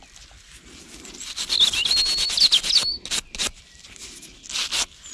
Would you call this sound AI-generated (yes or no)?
no